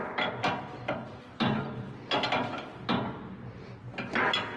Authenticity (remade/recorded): recorded